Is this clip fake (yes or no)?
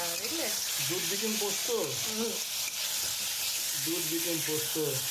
no